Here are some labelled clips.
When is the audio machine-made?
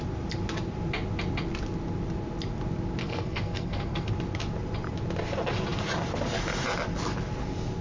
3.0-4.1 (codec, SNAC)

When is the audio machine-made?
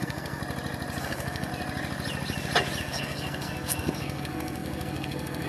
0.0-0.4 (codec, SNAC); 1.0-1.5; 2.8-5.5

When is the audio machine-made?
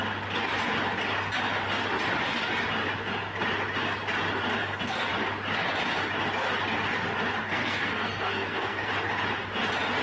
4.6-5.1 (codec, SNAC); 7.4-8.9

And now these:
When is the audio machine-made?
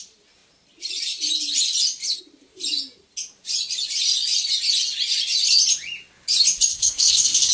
6.7-7.5 (codec, SNAC)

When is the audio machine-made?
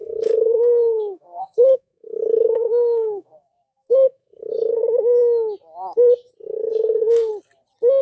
0.0-4.8 (codec, SNAC); 6.7-7.3